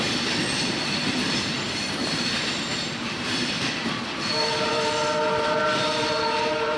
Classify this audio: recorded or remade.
remade